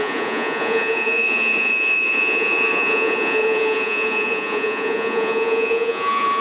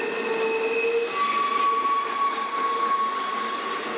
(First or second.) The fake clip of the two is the first